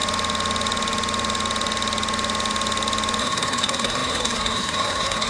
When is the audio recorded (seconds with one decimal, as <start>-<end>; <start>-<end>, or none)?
0.0-3.2